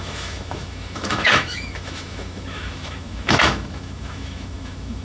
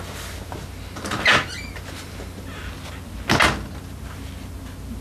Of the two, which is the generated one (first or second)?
first